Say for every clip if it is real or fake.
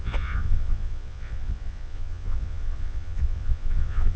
fake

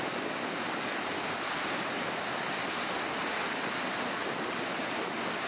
real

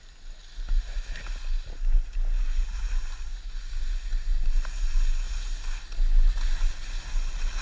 real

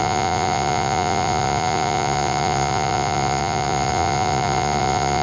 fake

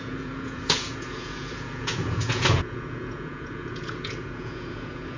fake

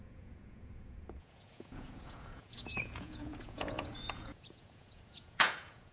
fake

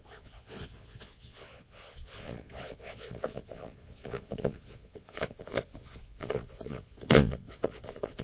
fake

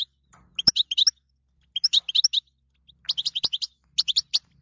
real